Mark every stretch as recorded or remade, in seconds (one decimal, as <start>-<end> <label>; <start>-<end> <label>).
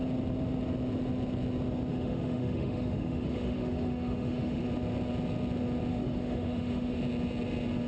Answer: 0.0-1.9 recorded; 1.9-4.6 remade; 4.6-5.9 recorded; 5.9-7.0 remade; 7.0-7.9 recorded